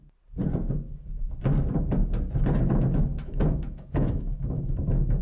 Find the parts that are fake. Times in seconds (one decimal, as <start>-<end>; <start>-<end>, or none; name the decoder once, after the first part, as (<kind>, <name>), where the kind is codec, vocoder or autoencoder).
3.1-4.6 (autoencoder, DAC-VAE)